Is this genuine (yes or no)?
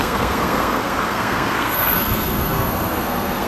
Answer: no